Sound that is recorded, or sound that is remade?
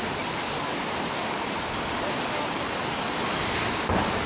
recorded